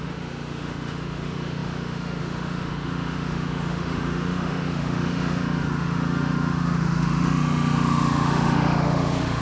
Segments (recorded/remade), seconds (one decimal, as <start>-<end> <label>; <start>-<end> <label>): 0.0-9.4 remade